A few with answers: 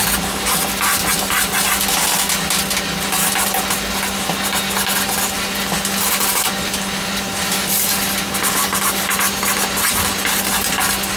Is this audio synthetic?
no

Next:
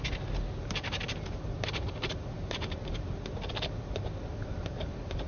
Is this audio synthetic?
no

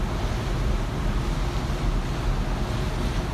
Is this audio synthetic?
no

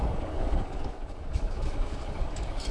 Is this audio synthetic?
yes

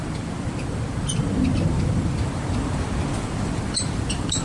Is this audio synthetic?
yes